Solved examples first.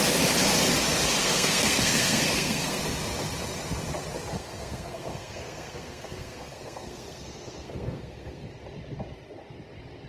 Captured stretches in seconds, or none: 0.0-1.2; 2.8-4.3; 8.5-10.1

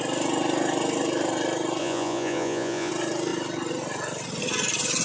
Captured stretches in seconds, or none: 0.0-1.8; 2.9-5.0

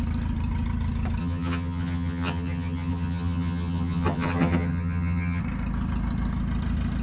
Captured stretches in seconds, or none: 0.0-1.2; 5.4-7.0

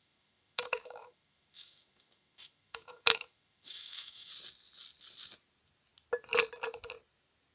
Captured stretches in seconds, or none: 4.3-7.5

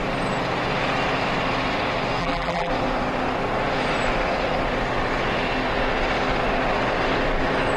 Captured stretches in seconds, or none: 0.0-2.2; 2.7-7.8